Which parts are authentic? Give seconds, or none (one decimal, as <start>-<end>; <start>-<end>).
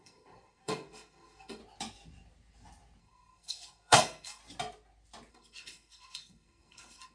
1.6-3.0; 4.4-5.3